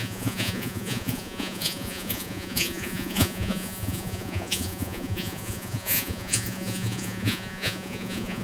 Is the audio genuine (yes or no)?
no